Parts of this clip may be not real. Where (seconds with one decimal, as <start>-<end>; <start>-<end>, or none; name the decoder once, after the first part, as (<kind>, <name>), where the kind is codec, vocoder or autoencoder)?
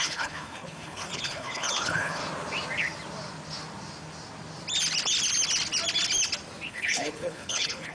0.0-2.2 (codec, HILCodec); 6.7-7.9